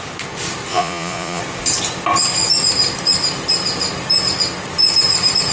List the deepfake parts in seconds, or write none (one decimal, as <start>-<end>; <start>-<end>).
0.7-1.4